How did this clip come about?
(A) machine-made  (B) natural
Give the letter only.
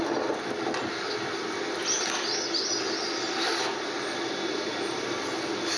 B